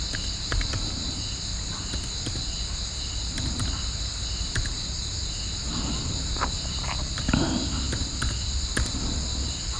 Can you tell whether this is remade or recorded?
recorded